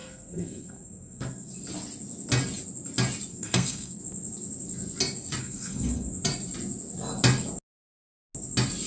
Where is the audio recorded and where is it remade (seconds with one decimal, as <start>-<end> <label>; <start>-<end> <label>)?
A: 0.0-1.5 remade; 1.5-3.3 recorded; 3.3-4.0 remade; 4.0-5.4 recorded; 5.4-6.1 remade; 6.1-8.9 recorded